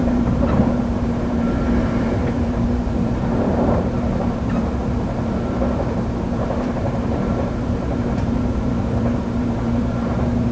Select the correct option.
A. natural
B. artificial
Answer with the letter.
B